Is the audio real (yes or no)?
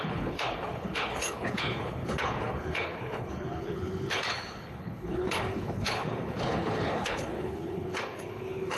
no